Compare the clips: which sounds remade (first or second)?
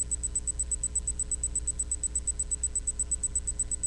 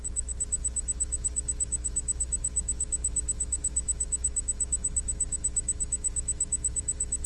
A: second